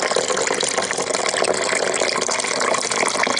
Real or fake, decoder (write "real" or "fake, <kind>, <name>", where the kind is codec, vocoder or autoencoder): real